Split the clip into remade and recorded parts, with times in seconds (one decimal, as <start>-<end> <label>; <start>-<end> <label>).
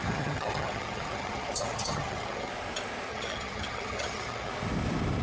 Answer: 0.0-2.5 remade; 2.5-3.1 recorded; 3.1-4.5 remade; 4.5-5.2 recorded